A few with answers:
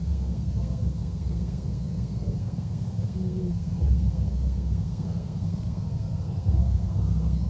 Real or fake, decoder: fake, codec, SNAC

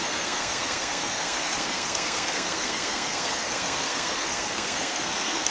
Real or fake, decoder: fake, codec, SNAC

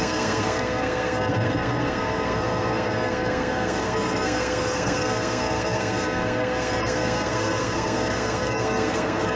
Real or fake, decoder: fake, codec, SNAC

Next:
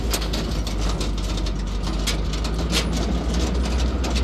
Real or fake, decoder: real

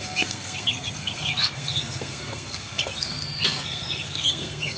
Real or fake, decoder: fake, codec, SNAC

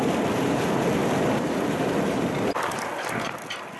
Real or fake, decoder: real